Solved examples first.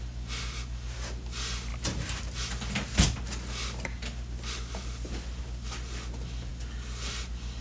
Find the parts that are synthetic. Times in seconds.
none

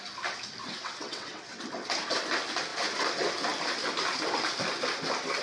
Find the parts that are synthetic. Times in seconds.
0.8-1.6 (vocoder, WaveNeXt)

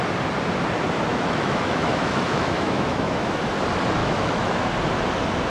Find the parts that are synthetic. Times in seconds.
1.1-3.4 (autoencoder, DAC-VAE); 4.0-4.7

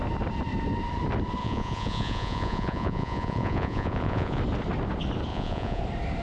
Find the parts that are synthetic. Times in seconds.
1.4-4.4 (vocoder, Vocos); 5.3-5.8

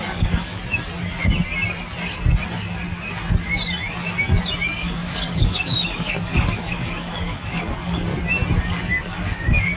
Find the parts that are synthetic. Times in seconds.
0.0-0.6 (codec, DAC); 4.8-8.1; 8.6-9.8

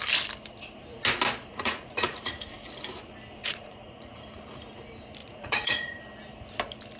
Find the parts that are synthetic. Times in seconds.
1.5-2.2 (vocoder, Vocos); 3.4-4.2; 5.2-6.0